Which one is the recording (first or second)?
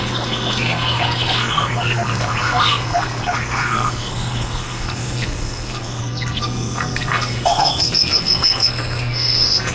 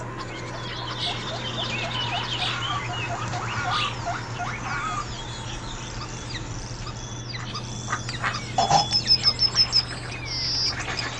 second